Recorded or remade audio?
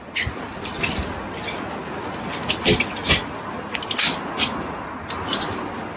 recorded